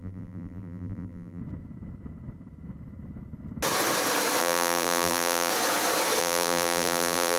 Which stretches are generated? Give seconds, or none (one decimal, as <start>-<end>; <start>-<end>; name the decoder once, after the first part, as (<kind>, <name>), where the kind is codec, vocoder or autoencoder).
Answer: 0.0-1.4 (vocoder, BigVGAN v2); 4.4-5.5; 6.2-7.4